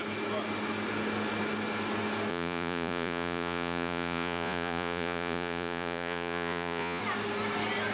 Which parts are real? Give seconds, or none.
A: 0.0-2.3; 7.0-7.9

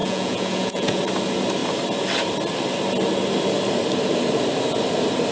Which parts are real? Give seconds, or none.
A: 1.0-5.3

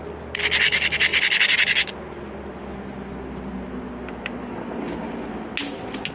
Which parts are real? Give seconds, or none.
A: 0.0-6.1

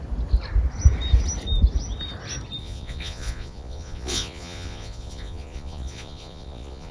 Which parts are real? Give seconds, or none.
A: 0.0-2.6

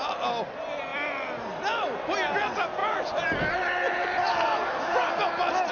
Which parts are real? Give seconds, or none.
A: 0.0-2.8; 5.1-5.7

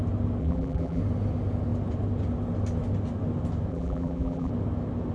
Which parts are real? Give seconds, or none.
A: 0.0-0.4; 1.0-3.7; 4.5-5.1

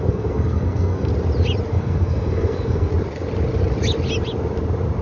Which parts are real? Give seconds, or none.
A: 1.1-1.7; 2.9-5.0

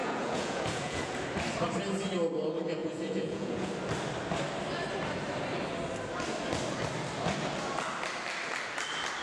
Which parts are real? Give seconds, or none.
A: 1.1-2.8; 3.7-9.2